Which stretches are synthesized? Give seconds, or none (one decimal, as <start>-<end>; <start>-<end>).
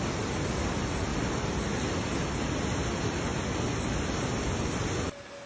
none